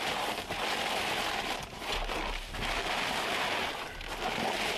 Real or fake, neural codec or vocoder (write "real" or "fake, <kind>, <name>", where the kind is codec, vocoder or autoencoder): real